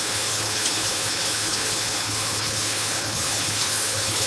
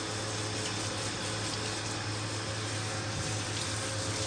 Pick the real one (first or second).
second